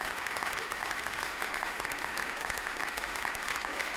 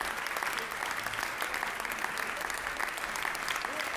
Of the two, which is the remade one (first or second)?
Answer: first